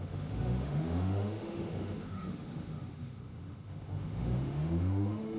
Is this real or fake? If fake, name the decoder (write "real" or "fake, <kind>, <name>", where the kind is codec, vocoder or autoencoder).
fake, autoencoder, DAC-VAE